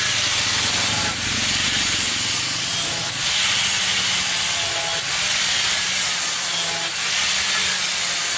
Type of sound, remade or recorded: recorded